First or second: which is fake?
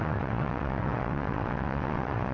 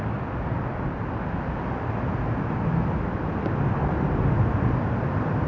first